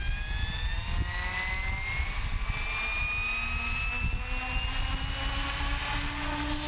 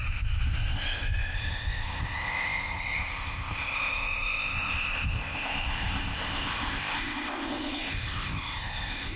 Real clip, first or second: first